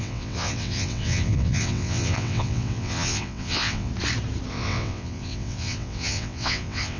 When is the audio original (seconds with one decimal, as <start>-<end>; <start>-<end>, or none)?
3.9-4.5